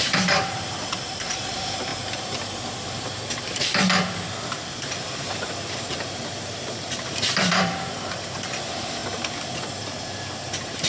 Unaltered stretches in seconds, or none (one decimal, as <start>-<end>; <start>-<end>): 1.9-2.8; 9.0-9.8